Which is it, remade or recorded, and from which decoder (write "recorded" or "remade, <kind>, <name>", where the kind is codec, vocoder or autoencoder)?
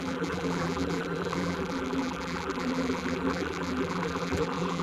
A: remade, vocoder, BigVGAN v2